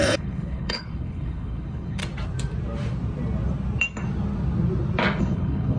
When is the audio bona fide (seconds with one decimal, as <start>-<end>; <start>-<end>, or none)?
2.0-5.2